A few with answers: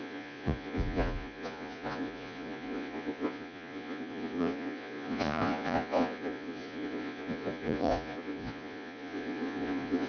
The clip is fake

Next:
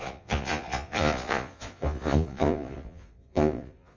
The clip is fake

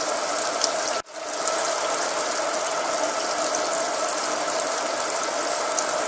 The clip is real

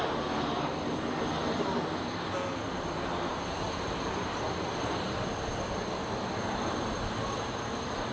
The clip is real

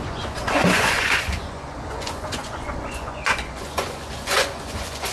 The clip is fake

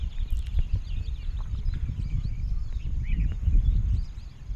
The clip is real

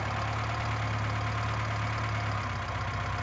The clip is real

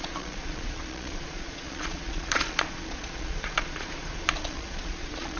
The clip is fake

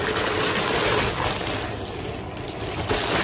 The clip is real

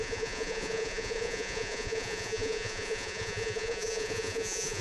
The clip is fake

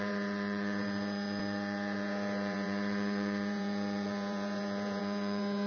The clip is fake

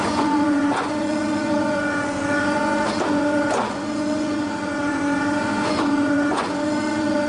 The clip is fake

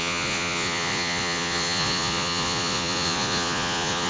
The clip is fake